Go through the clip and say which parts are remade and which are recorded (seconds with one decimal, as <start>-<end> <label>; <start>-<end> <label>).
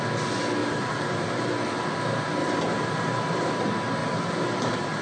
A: 0.0-0.6 recorded; 0.6-1.5 remade; 1.5-2.4 recorded; 2.4-3.5 remade; 3.5-4.0 recorded; 4.0-5.0 remade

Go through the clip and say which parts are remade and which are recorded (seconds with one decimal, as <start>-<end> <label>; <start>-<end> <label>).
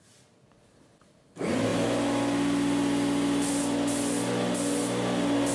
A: 0.0-5.5 recorded